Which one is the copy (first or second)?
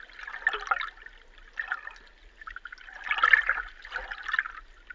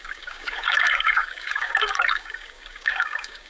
second